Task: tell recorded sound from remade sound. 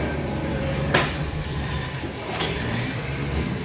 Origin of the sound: remade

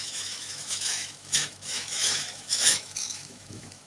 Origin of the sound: remade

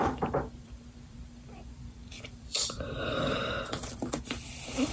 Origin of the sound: remade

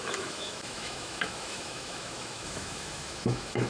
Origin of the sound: remade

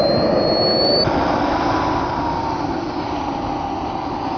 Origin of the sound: recorded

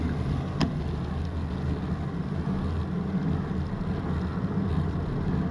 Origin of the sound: recorded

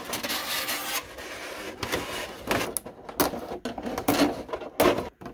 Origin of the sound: recorded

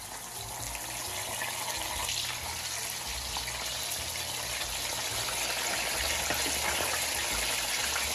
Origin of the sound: recorded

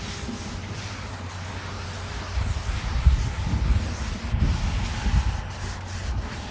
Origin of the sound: recorded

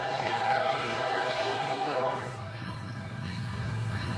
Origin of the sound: remade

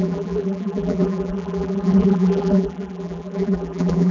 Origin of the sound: remade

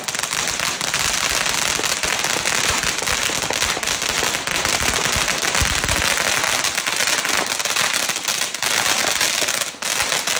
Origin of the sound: recorded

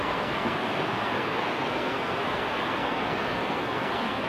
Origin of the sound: remade